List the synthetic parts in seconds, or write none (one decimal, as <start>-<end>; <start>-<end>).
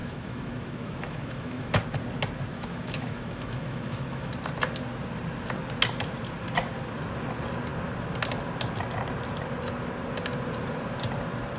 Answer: 0.0-1.8; 2.5-4.3